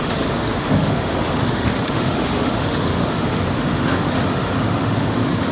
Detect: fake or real fake